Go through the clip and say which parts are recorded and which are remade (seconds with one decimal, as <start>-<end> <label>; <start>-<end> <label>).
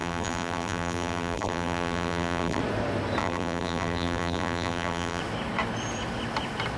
0.0-2.6 remade; 2.6-3.2 recorded; 3.2-5.2 remade; 5.2-6.8 recorded